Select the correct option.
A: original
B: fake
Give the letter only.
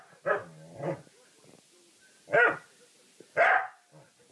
A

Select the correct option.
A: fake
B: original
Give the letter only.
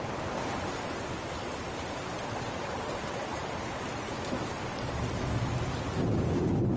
A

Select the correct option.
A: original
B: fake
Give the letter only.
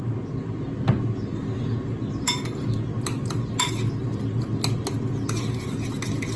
A